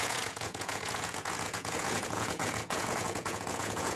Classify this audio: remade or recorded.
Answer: remade